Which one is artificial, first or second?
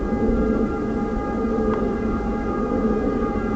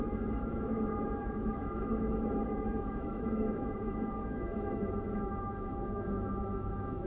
second